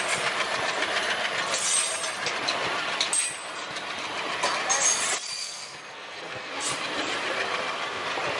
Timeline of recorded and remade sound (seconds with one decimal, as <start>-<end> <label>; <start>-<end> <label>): 0.0-5.4 recorded; 5.4-6.5 remade; 6.5-8.4 recorded

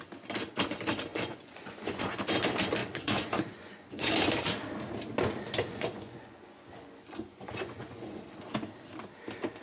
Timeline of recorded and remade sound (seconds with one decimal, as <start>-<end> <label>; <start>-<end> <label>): 0.0-1.1 recorded; 1.1-2.2 remade; 2.2-2.8 recorded; 2.8-4.1 remade; 4.1-5.7 recorded; 5.7-8.2 remade; 8.2-9.6 recorded

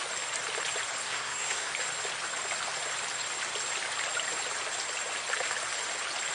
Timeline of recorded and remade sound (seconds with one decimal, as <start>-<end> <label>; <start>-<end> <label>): 0.0-1.0 recorded; 1.0-1.7 remade; 1.7-6.3 recorded

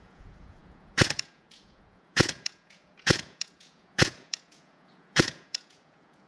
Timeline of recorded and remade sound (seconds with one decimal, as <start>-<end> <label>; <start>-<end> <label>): 0.0-6.3 remade

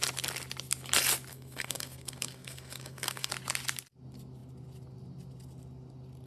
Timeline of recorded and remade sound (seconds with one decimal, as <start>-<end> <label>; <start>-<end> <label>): 0.0-1.3 recorded; 1.3-3.3 remade; 3.3-6.3 recorded